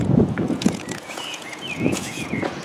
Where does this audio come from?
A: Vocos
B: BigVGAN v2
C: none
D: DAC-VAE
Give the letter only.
A